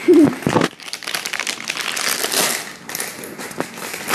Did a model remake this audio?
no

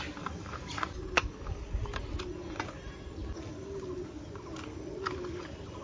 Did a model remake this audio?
no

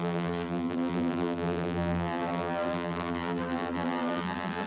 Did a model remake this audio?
yes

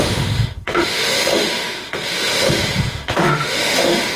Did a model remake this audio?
yes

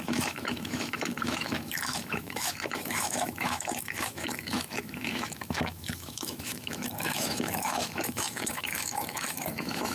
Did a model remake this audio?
yes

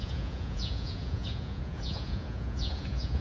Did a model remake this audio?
yes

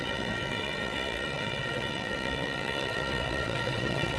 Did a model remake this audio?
yes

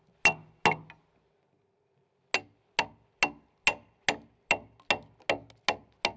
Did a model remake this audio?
no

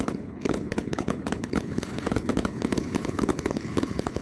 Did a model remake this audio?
yes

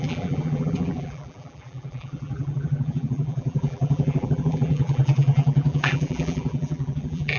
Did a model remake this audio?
yes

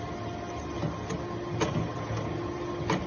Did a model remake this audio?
no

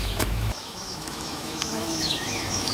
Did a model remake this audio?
yes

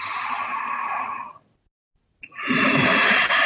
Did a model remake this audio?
no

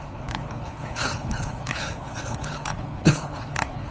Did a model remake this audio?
yes